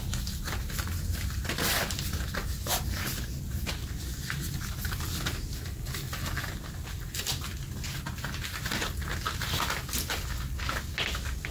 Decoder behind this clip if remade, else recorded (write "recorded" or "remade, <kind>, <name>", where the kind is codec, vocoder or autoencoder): recorded